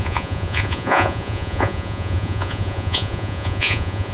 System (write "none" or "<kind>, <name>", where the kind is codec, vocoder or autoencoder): vocoder, Vocos